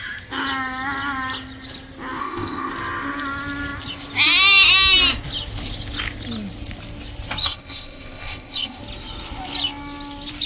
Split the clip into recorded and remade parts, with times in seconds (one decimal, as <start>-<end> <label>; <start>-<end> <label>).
0.0-2.2 recorded; 2.2-2.7 remade; 2.7-7.4 recorded; 7.4-8.8 remade; 8.8-10.5 recorded